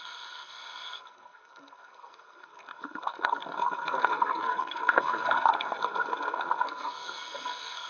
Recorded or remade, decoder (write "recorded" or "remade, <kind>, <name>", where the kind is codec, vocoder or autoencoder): remade, codec, SNAC